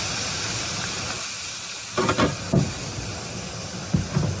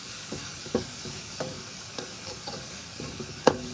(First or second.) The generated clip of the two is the second